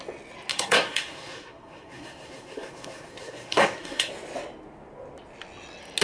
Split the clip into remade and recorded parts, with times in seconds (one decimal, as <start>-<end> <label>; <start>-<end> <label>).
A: 0.0-0.5 recorded; 0.5-4.1 remade; 4.1-6.0 recorded